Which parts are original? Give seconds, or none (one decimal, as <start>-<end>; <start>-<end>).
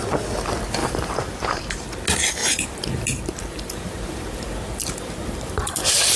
0.0-0.8; 1.6-2.4